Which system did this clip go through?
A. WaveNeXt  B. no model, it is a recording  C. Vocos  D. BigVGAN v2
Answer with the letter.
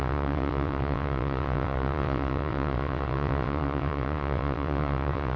A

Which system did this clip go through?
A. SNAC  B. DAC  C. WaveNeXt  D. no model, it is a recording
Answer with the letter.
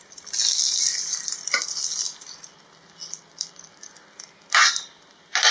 D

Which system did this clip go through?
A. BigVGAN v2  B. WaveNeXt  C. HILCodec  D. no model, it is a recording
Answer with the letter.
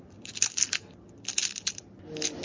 D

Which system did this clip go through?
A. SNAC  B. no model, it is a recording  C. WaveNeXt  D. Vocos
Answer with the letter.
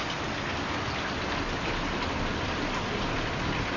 B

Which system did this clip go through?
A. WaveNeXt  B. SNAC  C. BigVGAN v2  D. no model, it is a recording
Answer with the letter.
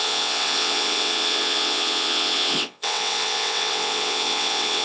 A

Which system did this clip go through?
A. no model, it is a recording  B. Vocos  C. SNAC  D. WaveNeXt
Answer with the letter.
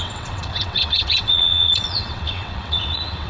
D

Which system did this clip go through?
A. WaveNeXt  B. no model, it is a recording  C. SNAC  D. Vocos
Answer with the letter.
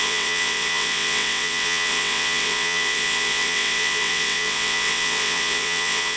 A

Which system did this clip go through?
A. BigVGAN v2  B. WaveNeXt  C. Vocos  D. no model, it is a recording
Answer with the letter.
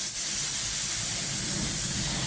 D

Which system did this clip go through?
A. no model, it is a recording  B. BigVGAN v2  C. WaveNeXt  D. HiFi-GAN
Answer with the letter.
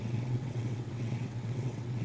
C